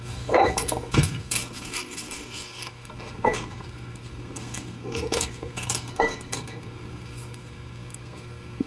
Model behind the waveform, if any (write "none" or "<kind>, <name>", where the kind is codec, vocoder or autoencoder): codec, SNAC